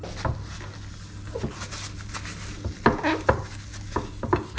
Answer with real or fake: real